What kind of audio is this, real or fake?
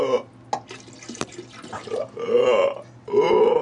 real